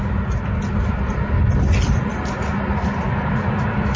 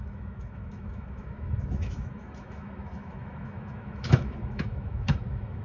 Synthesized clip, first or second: second